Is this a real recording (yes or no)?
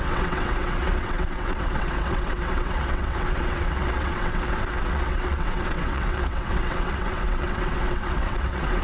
no